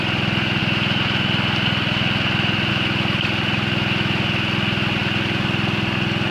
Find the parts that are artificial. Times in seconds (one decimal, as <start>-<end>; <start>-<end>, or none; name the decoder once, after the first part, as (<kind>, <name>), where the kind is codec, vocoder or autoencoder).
none